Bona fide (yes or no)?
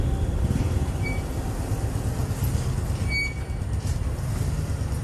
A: yes